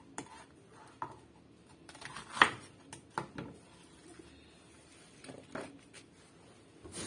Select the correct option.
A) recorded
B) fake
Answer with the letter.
A